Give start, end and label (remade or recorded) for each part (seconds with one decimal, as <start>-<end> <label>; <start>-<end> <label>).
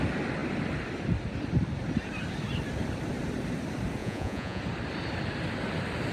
0.0-4.0 recorded; 4.0-4.6 remade; 4.6-6.1 recorded